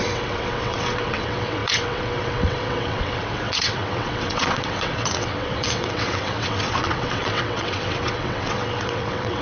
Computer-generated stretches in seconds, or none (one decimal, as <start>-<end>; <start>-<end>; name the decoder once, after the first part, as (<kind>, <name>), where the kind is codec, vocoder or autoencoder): 0.0-9.4 (vocoder, WaveNeXt)